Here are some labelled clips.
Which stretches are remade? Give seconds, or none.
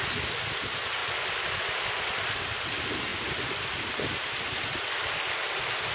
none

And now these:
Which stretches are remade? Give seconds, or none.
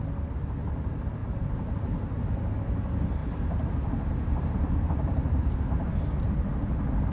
1.2-2.5 (vocoder, BigVGAN v2); 3.2-5.9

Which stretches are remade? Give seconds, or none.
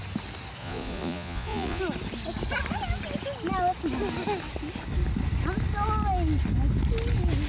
0.6-1.8 (vocoder, Vocos)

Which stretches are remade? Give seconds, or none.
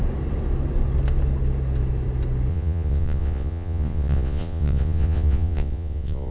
2.5-6.3 (vocoder, Vocos)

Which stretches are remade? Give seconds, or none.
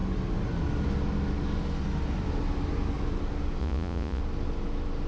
3.6-4.2 (vocoder, Vocos)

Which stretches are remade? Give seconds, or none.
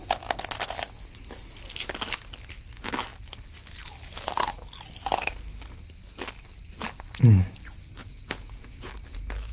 8.0-8.9 (vocoder, Vocos)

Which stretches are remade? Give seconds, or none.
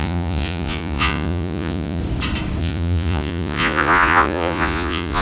0.0-2.0 (vocoder, Vocos); 2.6-5.2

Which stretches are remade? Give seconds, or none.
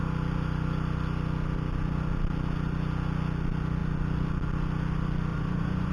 5.3-5.9 (vocoder, Vocos)